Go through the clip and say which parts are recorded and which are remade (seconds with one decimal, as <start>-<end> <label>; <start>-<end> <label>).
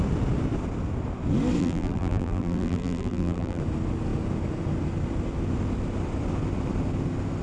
0.0-1.6 recorded; 1.6-3.6 remade; 3.6-7.4 recorded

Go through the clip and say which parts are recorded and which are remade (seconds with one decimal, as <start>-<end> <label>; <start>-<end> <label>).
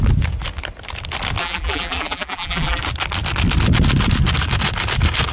0.0-1.4 recorded; 1.4-2.8 remade; 2.8-5.3 recorded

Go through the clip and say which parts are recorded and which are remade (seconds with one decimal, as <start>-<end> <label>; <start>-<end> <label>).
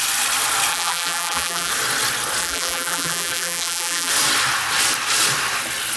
0.0-0.7 recorded; 0.7-1.7 remade; 1.7-2.4 recorded; 2.4-4.1 remade; 4.1-6.0 recorded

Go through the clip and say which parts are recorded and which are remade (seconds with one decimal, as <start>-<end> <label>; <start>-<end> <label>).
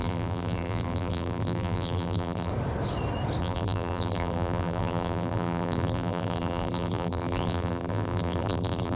0.0-2.5 remade; 2.5-3.4 recorded; 3.4-9.0 remade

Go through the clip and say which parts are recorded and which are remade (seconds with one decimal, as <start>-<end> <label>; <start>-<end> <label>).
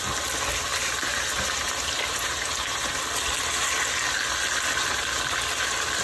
0.0-0.7 recorded; 0.7-3.0 remade; 3.0-6.0 recorded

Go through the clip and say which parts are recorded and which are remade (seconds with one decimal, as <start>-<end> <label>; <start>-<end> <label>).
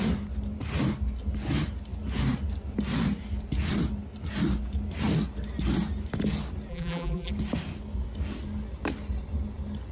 0.0-6.7 recorded; 6.7-7.3 remade; 7.3-9.9 recorded